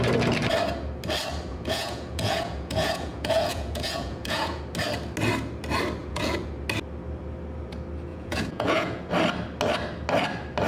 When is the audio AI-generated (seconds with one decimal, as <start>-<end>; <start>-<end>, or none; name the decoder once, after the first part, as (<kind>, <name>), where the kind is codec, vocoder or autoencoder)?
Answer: 1.5-4.6 (vocoder, Vocos); 6.0-6.5; 8.1-9.1